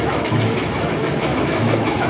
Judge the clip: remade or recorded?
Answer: remade